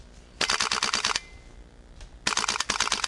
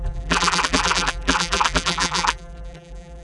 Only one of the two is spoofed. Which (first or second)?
second